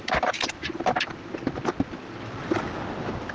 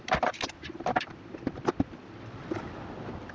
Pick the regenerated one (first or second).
second